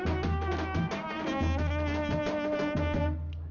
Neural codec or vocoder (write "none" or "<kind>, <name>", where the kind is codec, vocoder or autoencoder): none